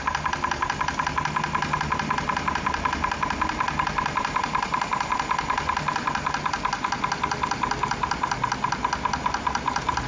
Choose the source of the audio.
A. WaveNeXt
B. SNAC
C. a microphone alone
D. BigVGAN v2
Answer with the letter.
C